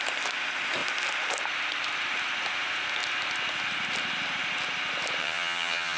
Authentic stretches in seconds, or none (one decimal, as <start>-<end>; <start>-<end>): 0.0-5.2